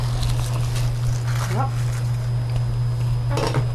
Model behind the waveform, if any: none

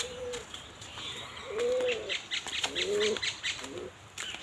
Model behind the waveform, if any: none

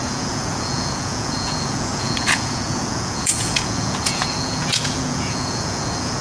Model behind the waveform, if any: vocoder, Vocos